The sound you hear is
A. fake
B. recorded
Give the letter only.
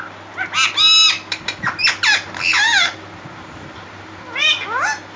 B